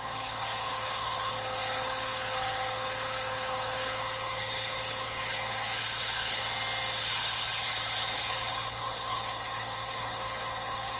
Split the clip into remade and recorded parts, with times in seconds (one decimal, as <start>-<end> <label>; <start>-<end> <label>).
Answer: 0.0-6.4 remade; 6.4-7.0 recorded; 7.0-11.0 remade